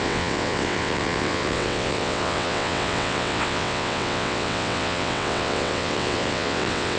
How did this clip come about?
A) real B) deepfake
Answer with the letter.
B